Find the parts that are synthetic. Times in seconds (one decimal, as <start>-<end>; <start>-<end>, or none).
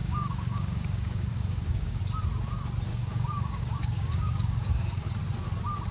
0.0-2.0; 2.9-5.1